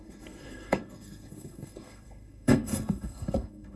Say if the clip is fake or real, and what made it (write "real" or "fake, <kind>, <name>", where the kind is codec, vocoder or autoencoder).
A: fake, codec, SNAC